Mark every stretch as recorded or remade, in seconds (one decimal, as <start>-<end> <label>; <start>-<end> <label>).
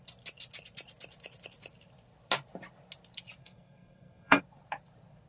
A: 0.0-3.4 recorded; 3.4-4.4 remade; 4.4-5.3 recorded